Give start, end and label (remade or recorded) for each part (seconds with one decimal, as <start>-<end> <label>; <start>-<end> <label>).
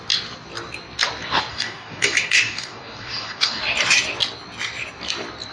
0.0-1.5 recorded; 1.5-3.6 remade; 3.6-5.5 recorded